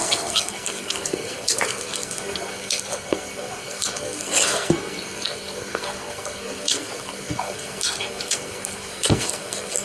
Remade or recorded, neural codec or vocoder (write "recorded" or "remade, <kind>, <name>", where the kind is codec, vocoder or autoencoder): remade, codec, SNAC